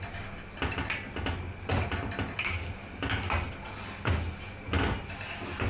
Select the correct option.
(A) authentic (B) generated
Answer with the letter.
A